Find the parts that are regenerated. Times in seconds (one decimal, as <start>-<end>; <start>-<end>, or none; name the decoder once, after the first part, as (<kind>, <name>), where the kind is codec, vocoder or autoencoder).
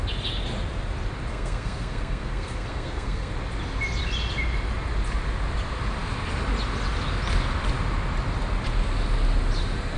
1.3-3.3 (codec, SNAC)